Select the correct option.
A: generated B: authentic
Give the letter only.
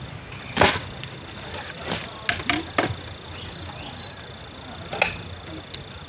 B